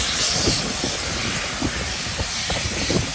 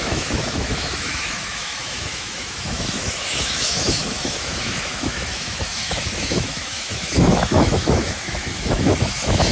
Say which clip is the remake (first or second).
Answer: second